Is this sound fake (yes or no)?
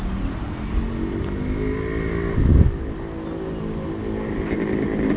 no